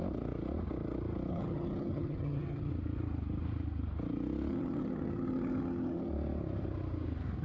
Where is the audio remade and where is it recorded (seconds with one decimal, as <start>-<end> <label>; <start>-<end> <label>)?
0.0-1.3 recorded; 1.3-2.7 remade; 2.7-4.5 recorded; 4.5-6.1 remade; 6.1-7.4 recorded